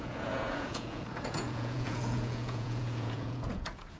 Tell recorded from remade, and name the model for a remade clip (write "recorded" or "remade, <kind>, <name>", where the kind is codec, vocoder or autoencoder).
remade, vocoder, Vocos